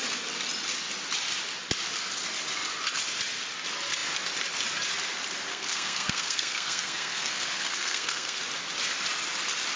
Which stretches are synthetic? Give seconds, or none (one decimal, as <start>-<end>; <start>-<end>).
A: 5.5-8.4